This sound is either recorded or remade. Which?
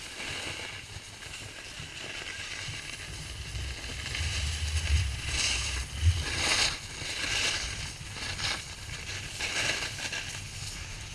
recorded